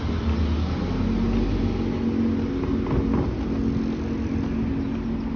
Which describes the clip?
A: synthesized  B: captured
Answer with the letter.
B